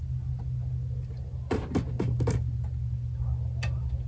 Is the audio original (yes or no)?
yes